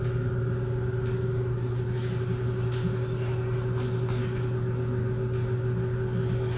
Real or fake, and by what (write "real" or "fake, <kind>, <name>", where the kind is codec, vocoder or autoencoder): real